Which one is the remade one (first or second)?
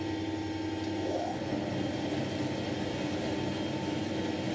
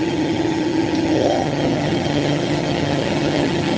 second